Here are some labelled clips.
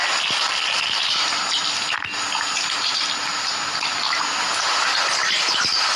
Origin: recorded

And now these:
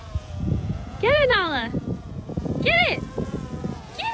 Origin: remade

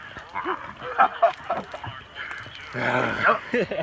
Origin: recorded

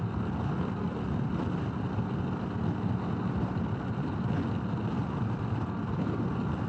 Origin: recorded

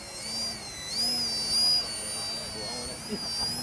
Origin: recorded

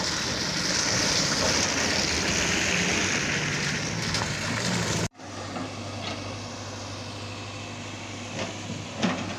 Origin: recorded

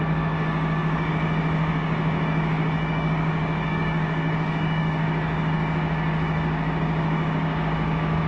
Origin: remade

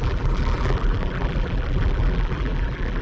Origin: remade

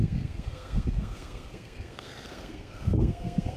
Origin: remade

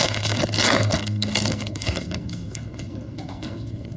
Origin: remade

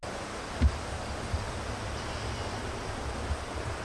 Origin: recorded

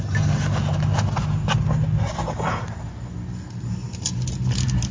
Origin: recorded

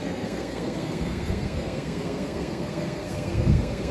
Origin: remade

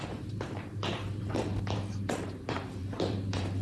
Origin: remade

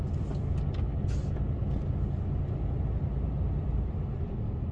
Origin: recorded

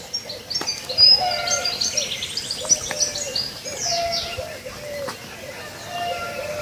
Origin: recorded